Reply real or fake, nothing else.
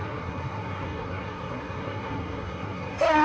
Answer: fake